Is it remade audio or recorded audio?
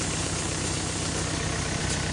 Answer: remade